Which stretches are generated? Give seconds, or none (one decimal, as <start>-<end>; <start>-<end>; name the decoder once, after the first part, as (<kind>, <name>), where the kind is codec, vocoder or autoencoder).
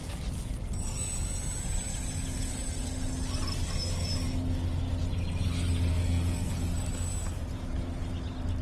5.9-6.5 (codec, SNAC)